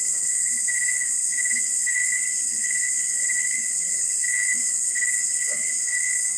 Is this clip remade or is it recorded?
remade